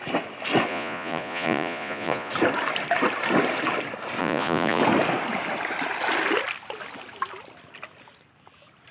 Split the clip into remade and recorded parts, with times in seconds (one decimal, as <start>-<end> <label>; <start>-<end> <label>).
0.0-0.7 recorded; 0.7-2.3 remade; 2.3-4.2 recorded; 4.2-4.8 remade; 4.8-8.9 recorded